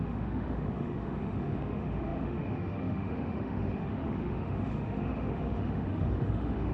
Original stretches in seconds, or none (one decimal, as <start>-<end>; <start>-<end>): none